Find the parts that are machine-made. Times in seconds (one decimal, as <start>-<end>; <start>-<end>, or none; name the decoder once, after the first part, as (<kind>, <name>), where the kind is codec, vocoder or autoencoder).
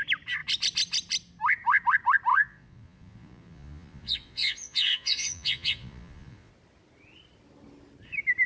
2.3-6.5 (vocoder, Vocos)